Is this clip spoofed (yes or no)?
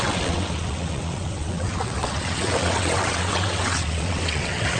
yes